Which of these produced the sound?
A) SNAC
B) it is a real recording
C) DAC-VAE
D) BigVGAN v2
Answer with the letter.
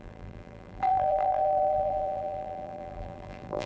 D